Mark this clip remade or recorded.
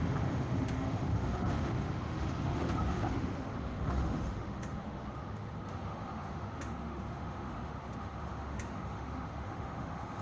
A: remade